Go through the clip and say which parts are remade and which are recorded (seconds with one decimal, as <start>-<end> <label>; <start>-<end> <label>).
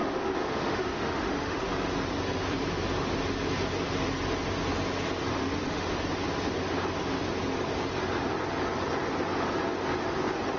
0.0-1.7 remade; 1.7-5.3 recorded; 5.3-5.9 remade; 5.9-10.6 recorded